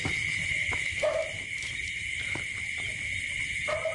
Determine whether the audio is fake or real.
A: real